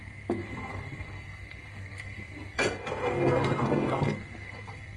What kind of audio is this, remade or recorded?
remade